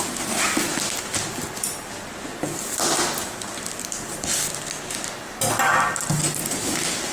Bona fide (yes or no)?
yes